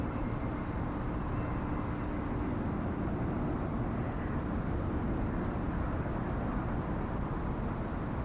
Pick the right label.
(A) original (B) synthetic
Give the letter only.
A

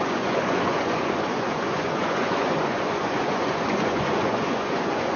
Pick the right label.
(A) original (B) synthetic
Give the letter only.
B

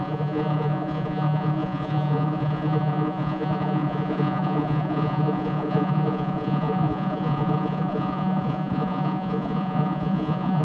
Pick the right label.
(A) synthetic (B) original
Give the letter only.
A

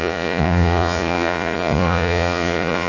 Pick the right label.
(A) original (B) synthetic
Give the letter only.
B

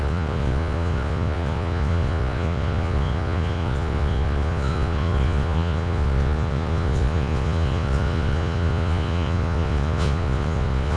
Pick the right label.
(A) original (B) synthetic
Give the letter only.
B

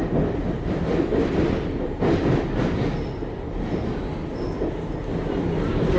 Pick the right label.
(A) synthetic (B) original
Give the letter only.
B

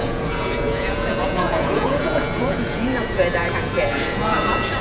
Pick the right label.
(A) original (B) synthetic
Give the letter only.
B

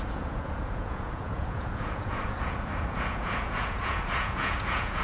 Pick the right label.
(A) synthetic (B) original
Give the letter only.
A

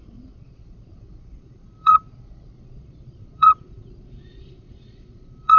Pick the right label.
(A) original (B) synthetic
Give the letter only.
B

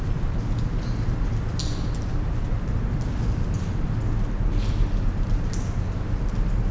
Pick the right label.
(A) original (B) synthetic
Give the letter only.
A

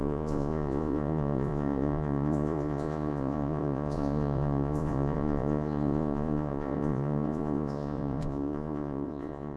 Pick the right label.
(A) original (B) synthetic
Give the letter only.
B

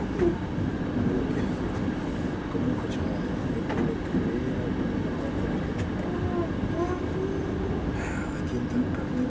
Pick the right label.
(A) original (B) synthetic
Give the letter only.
A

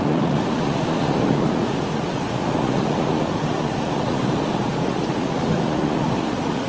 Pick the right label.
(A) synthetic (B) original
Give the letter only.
A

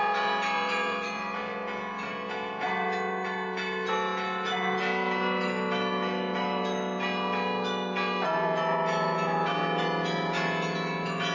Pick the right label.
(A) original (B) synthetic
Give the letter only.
B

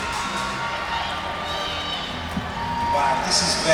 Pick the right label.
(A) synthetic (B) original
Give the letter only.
B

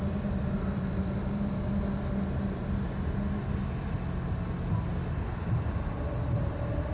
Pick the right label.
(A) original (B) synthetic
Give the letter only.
A